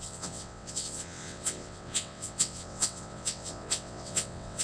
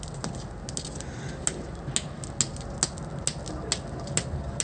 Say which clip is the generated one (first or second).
first